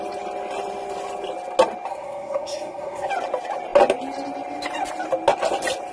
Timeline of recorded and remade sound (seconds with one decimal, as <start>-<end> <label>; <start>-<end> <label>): 0.0-1.9 recorded; 1.9-3.1 remade; 3.1-5.9 recorded